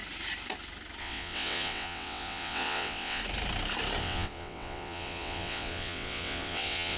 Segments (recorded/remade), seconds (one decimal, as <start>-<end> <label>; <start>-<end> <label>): 0.0-1.0 recorded; 1.0-3.2 remade; 3.2-4.0 recorded; 4.0-7.0 remade